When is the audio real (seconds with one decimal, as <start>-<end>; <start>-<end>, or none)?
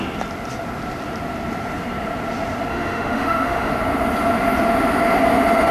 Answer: 0.0-2.7; 3.7-5.7